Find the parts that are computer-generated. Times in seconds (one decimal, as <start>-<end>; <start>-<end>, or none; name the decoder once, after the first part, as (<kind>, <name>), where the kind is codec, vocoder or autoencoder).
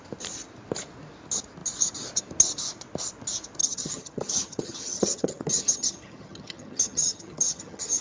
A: 3.6-8.0 (vocoder, HiFi-GAN)